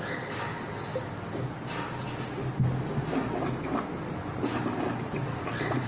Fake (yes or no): no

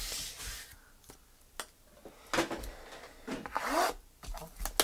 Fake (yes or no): no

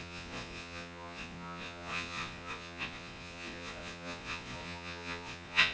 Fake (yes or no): yes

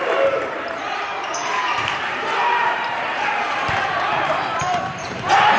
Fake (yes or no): yes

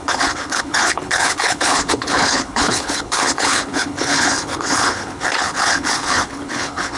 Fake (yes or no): yes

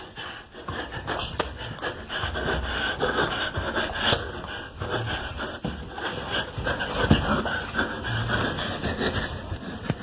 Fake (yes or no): no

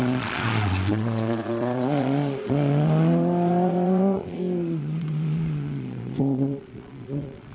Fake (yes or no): yes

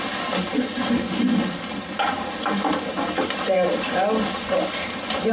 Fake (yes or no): no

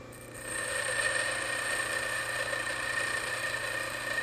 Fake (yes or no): no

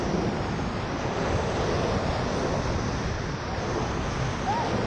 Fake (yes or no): no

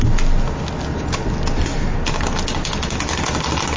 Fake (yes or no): no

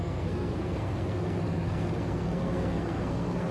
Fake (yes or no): yes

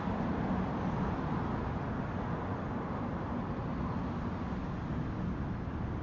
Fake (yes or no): no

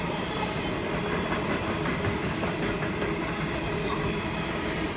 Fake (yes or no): yes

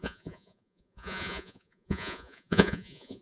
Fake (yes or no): yes